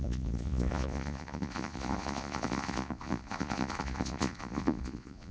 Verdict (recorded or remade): remade